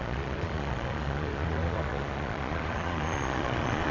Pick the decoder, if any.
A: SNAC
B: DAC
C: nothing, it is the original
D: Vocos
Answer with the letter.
D